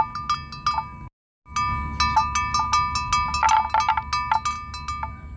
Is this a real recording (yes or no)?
yes